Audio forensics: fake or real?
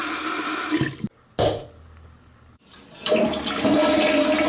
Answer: real